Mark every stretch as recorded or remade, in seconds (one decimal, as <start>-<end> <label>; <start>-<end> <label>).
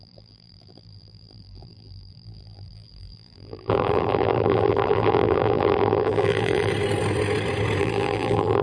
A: 0.0-6.7 remade; 6.7-7.8 recorded; 7.8-8.6 remade